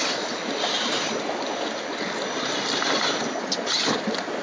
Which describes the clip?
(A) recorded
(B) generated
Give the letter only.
A